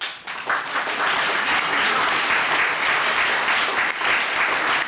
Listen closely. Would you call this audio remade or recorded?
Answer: recorded